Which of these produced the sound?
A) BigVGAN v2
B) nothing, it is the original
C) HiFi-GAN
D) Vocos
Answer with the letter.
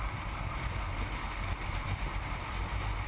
B